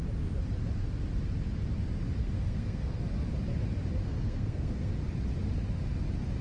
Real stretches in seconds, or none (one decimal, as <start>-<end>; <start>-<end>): 0.0-2.2; 3.0-4.0; 4.9-6.4